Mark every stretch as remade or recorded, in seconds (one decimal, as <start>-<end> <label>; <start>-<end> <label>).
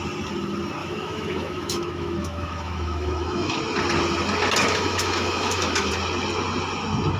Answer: 0.0-0.8 recorded; 0.8-3.6 remade; 3.6-4.6 recorded; 4.6-5.9 remade; 5.9-7.2 recorded